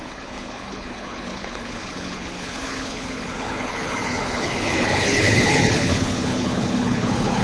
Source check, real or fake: fake